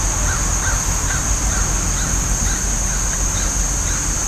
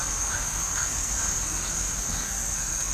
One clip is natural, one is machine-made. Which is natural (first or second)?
first